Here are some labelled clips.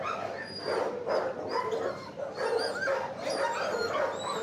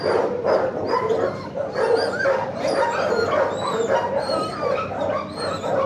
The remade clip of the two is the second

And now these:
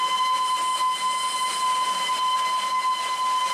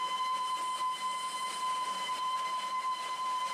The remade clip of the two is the second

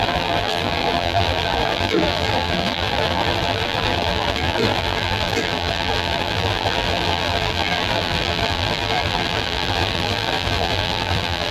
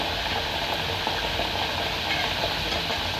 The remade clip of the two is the first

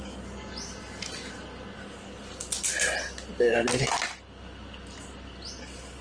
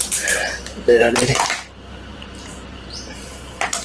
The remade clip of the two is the second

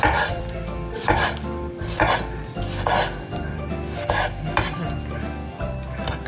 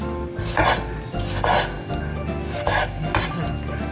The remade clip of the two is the first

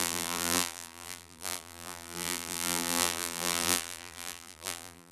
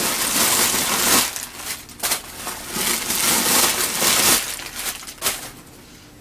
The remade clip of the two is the first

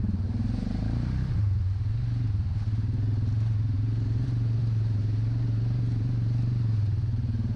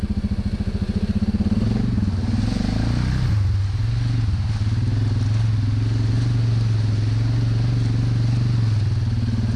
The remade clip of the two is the first